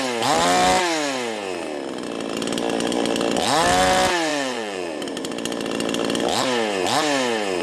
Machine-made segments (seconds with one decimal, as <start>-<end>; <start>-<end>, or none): 4.3-5.3